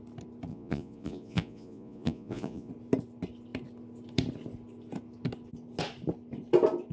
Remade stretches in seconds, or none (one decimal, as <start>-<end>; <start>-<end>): 0.5-2.7